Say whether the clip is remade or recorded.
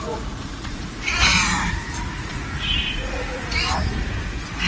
remade